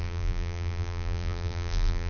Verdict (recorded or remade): remade